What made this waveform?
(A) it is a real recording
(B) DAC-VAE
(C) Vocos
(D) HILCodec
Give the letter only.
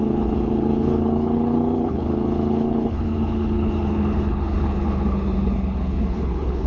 D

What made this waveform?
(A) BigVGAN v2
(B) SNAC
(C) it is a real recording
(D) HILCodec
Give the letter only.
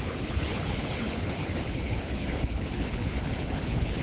D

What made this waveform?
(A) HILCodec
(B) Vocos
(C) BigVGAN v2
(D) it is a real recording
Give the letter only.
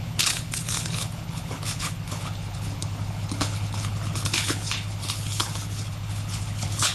A